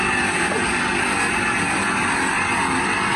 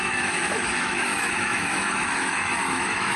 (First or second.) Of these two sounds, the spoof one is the second